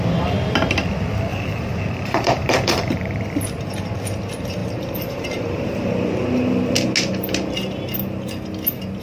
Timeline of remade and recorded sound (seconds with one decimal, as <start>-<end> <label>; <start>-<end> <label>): 0.0-1.3 recorded; 1.3-3.2 remade; 3.2-4.6 recorded; 4.6-5.9 remade; 5.9-9.0 recorded